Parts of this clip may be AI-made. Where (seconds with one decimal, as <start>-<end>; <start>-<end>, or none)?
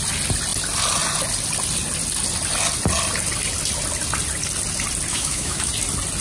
5.1-5.7